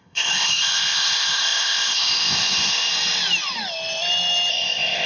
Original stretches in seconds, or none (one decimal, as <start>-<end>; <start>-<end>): 2.9-4.5